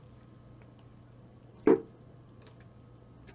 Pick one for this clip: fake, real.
real